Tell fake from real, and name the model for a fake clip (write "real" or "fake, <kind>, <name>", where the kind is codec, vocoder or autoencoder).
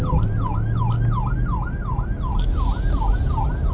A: real